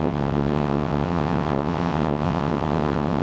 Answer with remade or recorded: remade